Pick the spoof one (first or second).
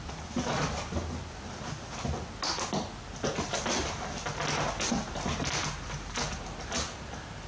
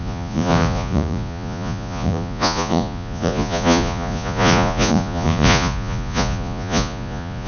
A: second